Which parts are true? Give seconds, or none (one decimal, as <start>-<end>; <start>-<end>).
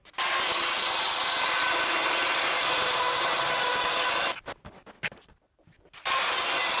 0.0-6.8